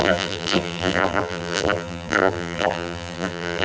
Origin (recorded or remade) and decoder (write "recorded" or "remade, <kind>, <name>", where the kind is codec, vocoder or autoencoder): remade, vocoder, BigVGAN v2